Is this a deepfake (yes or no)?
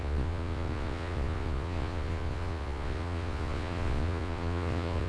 yes